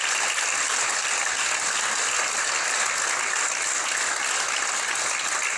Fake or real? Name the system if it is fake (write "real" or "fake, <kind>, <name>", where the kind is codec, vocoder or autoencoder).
real